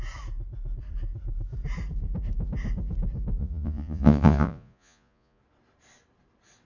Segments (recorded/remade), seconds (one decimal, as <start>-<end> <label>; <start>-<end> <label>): 0.0-3.4 recorded; 3.4-5.4 remade; 5.4-6.6 recorded

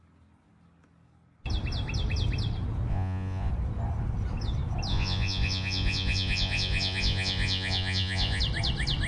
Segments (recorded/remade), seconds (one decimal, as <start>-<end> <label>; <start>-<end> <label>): 0.0-2.9 recorded; 2.9-3.5 remade; 3.5-4.9 recorded; 4.9-8.4 remade; 8.4-9.1 recorded

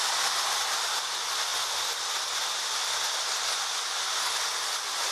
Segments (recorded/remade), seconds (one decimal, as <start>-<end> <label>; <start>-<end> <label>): 0.0-5.1 recorded

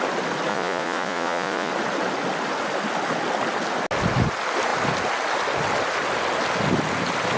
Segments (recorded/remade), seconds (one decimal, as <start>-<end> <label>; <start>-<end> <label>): 0.0-0.5 recorded; 0.5-1.7 remade; 1.7-7.4 recorded

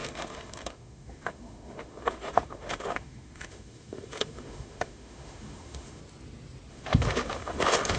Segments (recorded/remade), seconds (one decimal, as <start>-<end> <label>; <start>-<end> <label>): 0.0-6.0 remade; 6.0-6.7 recorded; 6.7-8.0 remade

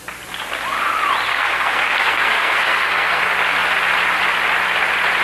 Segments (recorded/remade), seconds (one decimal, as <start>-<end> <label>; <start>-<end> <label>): 0.0-1.3 recorded; 1.3-3.2 remade; 3.2-5.2 recorded

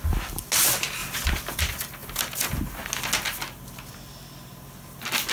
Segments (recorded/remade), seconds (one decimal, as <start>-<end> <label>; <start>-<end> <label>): 0.0-5.3 recorded